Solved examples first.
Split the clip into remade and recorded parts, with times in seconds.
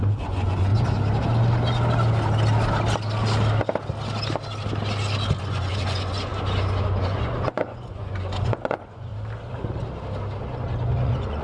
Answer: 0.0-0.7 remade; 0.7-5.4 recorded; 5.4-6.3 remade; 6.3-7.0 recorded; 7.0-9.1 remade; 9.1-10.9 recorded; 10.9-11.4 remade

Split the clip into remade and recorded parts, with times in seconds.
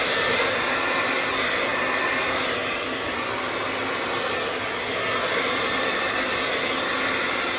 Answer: 0.0-7.6 recorded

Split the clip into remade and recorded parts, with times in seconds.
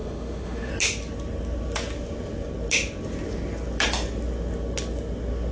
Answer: 0.0-0.7 remade; 0.7-5.5 recorded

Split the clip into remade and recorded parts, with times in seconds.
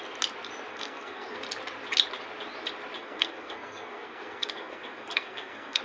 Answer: 0.0-0.7 recorded; 0.7-1.4 remade; 1.4-3.0 recorded; 3.0-5.8 remade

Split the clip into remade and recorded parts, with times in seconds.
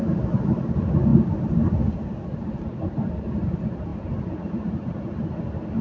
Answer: 0.0-5.8 recorded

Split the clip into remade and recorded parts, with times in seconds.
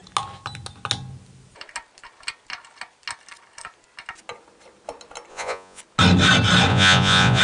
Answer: 0.0-5.3 recorded; 5.3-5.8 remade; 5.8-6.7 recorded; 6.7-7.4 remade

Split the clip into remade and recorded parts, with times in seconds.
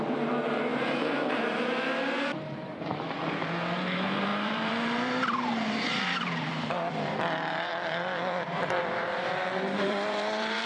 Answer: 0.0-7.7 remade; 7.7-8.8 recorded; 8.8-10.7 remade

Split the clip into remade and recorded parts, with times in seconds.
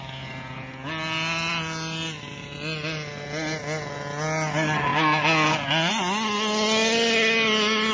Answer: 0.0-7.9 recorded